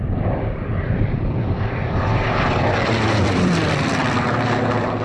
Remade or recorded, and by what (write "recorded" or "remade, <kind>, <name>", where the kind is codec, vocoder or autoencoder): remade, vocoder, BigVGAN v2